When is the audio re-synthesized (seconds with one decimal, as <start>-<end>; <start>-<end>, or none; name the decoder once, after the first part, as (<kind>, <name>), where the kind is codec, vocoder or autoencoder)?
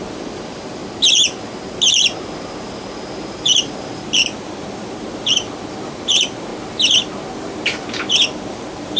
0.0-0.8 (vocoder, BigVGAN v2); 1.8-6.5; 8.1-9.0